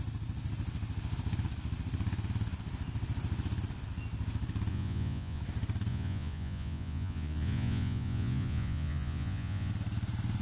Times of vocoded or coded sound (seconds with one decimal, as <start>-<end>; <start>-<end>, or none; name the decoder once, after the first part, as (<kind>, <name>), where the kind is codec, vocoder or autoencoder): 4.7-5.4 (vocoder, Vocos); 5.9-9.7

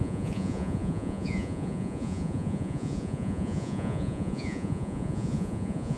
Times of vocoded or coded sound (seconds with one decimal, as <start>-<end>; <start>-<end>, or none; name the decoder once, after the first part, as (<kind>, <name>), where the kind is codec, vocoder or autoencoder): 0.0-6.0 (vocoder, Vocos)

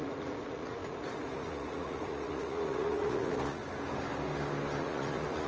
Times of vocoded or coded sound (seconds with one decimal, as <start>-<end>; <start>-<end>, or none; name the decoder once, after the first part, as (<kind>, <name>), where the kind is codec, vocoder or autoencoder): 0.0-3.6 (vocoder, Vocos); 4.8-5.5

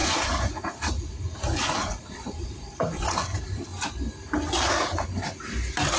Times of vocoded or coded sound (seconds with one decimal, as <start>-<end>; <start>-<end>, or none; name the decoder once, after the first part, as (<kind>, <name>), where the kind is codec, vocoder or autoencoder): 0.0-3.7 (vocoder, Vocos)

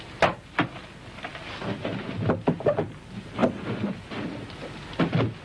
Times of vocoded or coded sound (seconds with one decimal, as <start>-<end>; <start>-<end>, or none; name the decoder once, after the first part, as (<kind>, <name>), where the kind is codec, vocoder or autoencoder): none

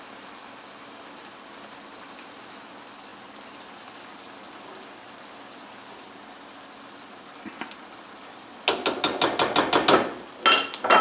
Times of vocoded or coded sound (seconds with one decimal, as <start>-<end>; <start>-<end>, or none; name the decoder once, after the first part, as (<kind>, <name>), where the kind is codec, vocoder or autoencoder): none